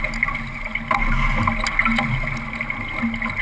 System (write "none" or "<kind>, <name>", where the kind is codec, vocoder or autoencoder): none